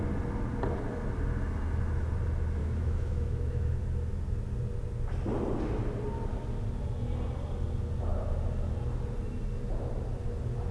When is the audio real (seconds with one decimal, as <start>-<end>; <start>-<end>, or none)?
0.0-2.6; 3.8-10.7